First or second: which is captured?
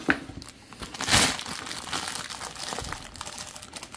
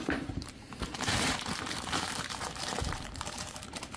first